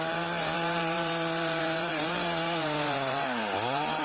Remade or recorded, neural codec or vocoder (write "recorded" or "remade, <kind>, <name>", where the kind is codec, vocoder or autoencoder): remade, vocoder, BigVGAN v2